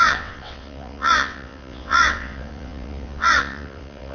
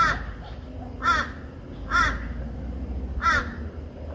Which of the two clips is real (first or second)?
second